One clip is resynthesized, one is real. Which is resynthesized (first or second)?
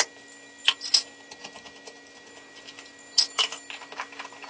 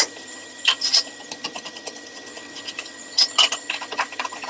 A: second